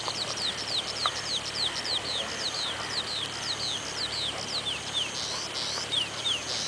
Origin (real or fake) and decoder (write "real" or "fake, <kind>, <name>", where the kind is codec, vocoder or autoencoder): real